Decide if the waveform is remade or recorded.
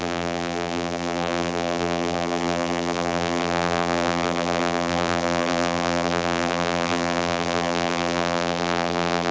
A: remade